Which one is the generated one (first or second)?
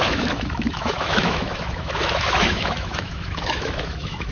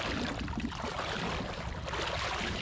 first